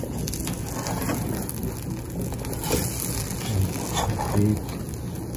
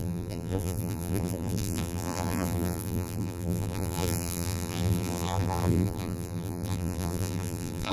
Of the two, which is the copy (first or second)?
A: second